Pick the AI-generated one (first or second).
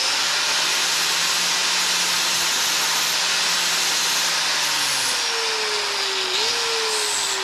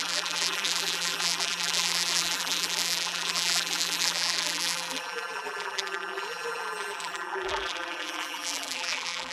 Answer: second